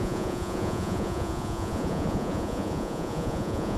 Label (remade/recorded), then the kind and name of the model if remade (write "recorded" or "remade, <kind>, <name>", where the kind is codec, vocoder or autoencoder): remade, vocoder, Vocos